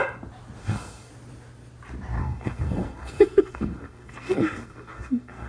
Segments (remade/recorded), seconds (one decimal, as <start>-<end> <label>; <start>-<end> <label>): 0.0-0.6 recorded; 0.6-1.1 remade; 1.1-2.2 recorded; 2.2-5.5 remade